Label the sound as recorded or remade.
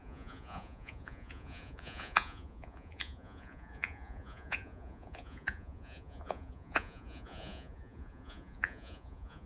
remade